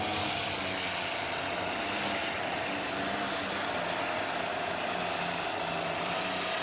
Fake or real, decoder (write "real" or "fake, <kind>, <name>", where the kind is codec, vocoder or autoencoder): real